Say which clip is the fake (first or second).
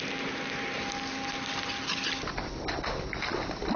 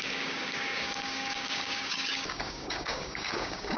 second